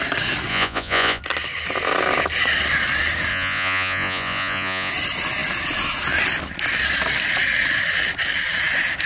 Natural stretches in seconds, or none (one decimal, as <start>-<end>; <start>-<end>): 0.0-0.5; 1.2-3.3; 4.9-9.1